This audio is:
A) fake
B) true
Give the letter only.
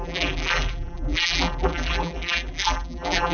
A